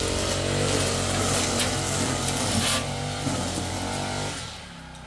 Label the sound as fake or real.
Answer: real